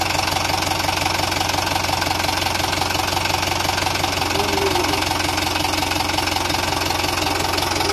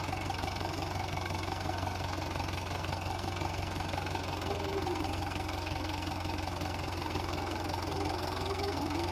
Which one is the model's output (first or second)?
second